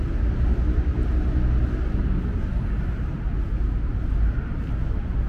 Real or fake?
real